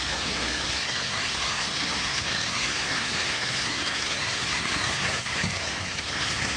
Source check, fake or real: fake